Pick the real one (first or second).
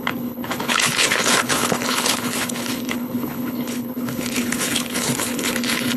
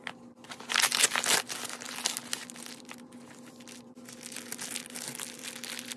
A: second